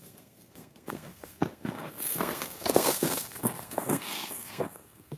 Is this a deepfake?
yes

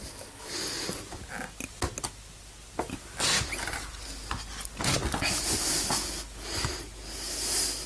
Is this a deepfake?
no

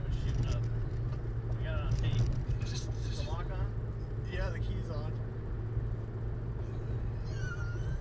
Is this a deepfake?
no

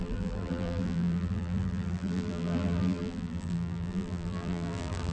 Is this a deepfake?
yes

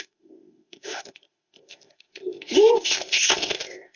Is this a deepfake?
yes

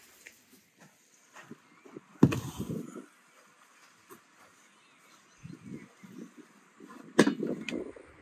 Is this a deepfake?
no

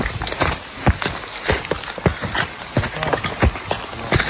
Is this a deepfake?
no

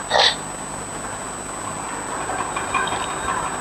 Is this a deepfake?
no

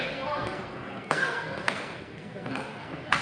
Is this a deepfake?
yes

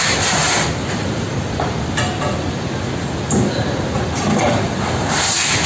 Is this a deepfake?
no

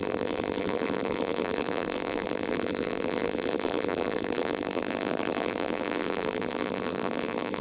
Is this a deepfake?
yes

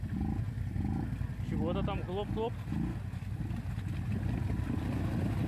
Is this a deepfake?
no